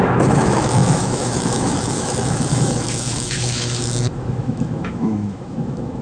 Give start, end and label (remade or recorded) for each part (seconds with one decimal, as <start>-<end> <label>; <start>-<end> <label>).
0.0-6.0 remade